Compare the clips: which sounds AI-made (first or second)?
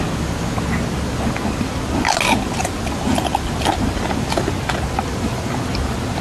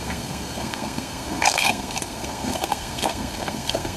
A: second